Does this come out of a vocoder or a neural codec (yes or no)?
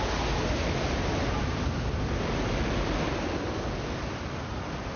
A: no